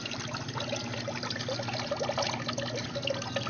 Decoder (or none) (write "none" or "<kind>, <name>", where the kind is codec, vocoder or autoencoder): none